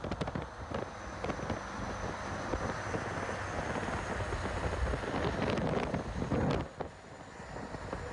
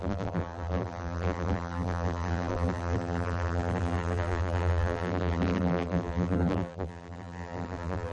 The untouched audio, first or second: first